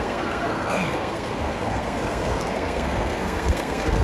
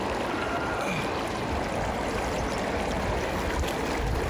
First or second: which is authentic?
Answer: second